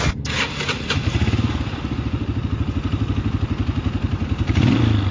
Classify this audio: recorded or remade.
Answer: recorded